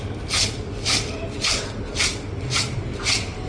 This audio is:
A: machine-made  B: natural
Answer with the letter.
B